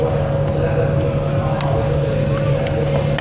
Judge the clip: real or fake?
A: real